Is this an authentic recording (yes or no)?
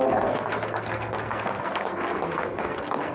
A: no